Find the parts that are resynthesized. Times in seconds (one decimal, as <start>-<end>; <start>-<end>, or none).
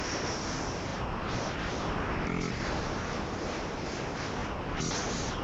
none